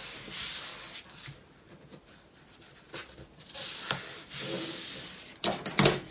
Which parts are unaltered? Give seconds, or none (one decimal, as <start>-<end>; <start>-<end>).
0.0-6.1